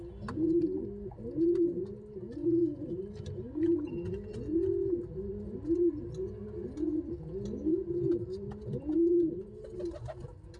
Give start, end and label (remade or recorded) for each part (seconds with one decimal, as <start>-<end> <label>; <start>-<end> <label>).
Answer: 0.0-10.6 recorded